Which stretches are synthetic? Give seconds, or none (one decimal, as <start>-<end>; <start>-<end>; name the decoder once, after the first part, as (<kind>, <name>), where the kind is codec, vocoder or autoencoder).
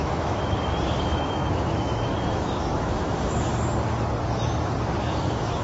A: 0.0-3.5 (autoencoder, DAC-VAE); 5.0-5.6